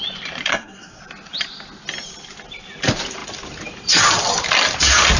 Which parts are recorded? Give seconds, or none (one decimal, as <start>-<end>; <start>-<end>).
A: 0.0-0.5; 1.0-5.2